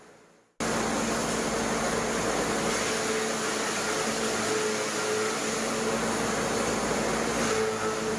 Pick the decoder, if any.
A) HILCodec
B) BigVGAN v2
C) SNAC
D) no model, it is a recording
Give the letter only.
D